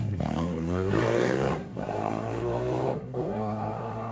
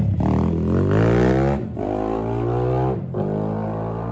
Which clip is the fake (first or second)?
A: first